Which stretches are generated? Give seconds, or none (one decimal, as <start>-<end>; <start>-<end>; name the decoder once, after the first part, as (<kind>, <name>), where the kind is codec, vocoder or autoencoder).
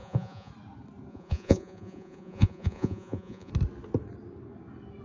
0.0-0.5 (vocoder, Vocos); 1.1-3.5